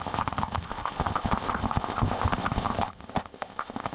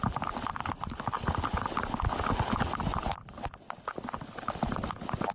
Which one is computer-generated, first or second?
first